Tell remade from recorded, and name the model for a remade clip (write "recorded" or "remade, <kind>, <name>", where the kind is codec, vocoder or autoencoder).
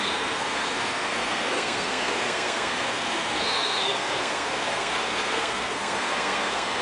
remade, codec, SNAC